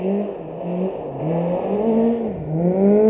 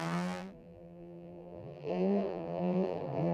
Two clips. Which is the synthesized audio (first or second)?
second